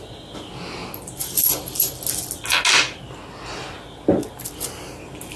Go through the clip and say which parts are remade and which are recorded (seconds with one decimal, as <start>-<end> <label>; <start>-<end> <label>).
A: 0.0-5.4 recorded